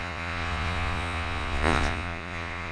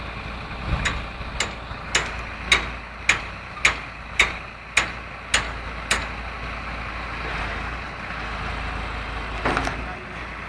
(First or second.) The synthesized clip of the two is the first